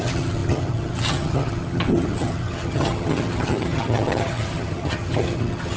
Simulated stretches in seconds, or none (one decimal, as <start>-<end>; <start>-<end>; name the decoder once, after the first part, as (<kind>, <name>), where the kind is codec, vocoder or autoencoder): 0.0-5.8 (vocoder, HiFi-GAN)

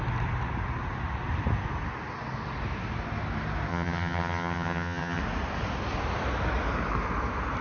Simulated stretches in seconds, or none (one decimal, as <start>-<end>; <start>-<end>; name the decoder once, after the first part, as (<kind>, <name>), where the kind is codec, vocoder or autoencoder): 3.7-5.2 (vocoder, HiFi-GAN)

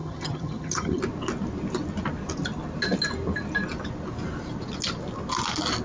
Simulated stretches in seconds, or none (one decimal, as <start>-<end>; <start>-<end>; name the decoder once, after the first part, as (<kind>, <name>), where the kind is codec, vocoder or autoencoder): 0.0-1.0 (vocoder, HiFi-GAN)

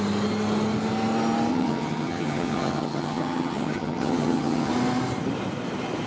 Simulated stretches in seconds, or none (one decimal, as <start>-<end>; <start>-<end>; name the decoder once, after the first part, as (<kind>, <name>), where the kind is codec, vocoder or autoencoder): 1.5-4.7 (vocoder, HiFi-GAN)

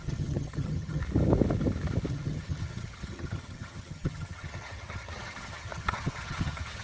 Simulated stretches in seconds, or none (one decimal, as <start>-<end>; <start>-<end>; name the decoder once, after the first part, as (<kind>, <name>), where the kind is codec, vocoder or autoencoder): 0.0-1.0 (vocoder, HiFi-GAN); 2.1-6.8